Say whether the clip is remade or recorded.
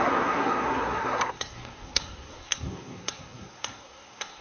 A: remade